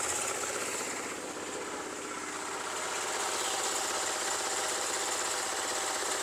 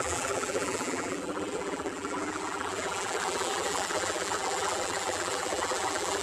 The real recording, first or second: first